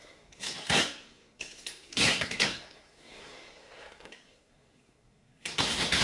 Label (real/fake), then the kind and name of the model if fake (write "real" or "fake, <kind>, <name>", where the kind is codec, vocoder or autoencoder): fake, codec, SNAC